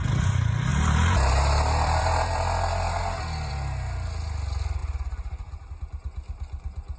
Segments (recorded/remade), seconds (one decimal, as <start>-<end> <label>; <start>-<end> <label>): 0.0-0.7 recorded; 0.7-3.5 remade; 3.5-7.0 recorded